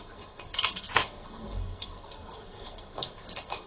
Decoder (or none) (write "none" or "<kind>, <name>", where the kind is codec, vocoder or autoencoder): codec, SNAC